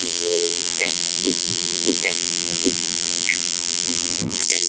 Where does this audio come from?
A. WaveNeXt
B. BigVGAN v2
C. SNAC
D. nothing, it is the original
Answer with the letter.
B